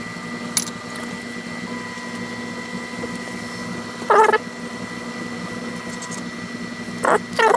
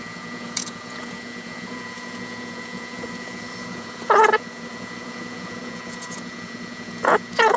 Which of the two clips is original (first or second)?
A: first